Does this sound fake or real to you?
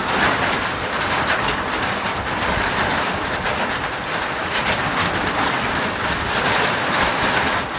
real